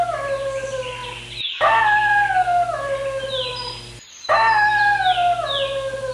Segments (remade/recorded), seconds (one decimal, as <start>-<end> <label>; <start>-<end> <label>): 0.0-6.1 recorded